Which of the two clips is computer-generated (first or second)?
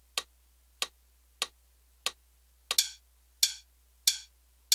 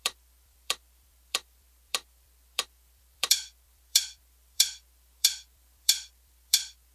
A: second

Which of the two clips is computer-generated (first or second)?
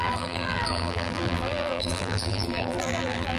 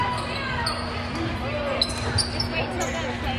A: first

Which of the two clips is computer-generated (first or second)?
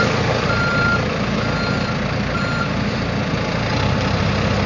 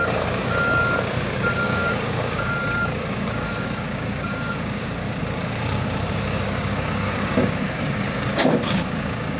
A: second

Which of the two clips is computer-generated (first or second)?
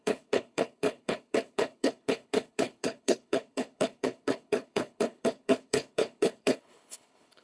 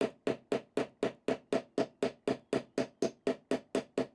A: first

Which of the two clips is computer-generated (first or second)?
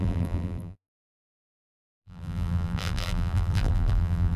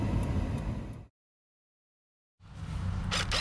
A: first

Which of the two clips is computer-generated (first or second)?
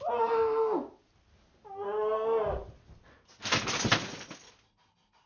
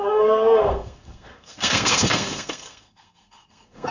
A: second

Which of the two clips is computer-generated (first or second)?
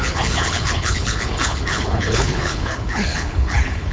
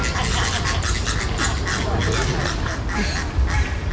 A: first